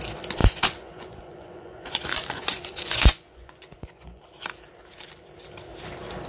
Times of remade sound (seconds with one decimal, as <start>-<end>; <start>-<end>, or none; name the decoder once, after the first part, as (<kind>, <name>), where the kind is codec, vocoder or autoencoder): 0.4-4.2 (vocoder, Vocos)

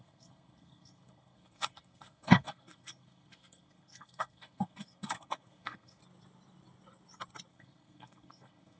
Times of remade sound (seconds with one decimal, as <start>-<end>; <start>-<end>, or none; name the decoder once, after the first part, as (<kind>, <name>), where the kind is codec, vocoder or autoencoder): 0.0-6.0 (codec, SNAC); 7.5-8.8

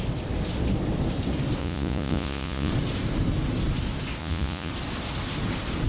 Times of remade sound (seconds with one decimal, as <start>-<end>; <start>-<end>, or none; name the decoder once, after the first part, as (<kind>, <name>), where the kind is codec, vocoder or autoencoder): 1.6-2.7 (vocoder, Vocos); 4.2-4.7

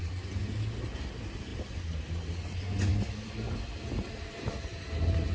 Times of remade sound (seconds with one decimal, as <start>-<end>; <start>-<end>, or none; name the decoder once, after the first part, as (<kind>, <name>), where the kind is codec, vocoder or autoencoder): none